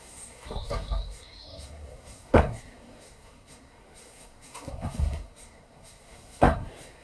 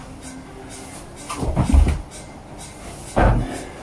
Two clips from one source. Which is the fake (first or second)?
first